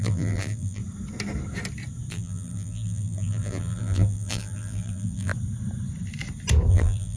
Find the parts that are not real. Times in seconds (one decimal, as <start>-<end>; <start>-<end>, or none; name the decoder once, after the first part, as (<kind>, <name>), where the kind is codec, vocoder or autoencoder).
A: 0.0-0.8 (vocoder, BigVGAN v2); 2.1-5.3; 6.7-7.2